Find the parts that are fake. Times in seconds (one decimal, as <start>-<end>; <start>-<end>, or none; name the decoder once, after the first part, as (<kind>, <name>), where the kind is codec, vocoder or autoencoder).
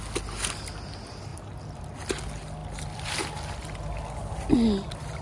none